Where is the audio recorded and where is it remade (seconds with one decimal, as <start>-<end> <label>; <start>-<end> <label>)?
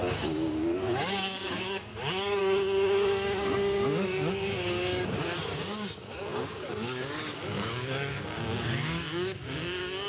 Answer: 0.0-10.1 remade